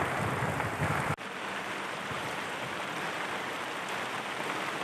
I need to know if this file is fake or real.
real